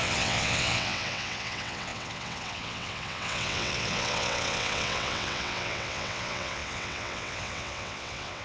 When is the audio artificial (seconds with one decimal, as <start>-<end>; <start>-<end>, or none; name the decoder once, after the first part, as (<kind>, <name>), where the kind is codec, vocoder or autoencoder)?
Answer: 0.0-8.4 (vocoder, WaveNeXt)